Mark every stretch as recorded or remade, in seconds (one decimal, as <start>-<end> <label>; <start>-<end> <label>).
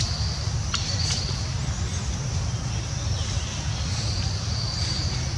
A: 0.0-5.4 recorded